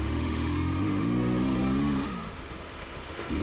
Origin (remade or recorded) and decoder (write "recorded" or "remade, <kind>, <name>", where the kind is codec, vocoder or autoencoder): remade, autoencoder, DAC-VAE